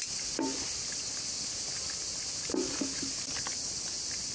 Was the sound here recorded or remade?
recorded